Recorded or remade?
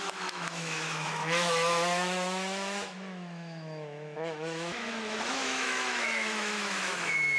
remade